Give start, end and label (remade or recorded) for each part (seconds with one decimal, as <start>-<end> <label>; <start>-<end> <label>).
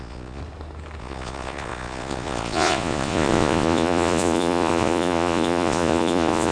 0.0-0.4 remade; 0.4-1.0 recorded; 1.0-6.5 remade